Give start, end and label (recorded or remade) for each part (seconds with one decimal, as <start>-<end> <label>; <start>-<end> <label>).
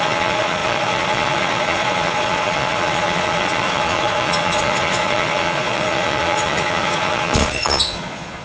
0.0-8.4 remade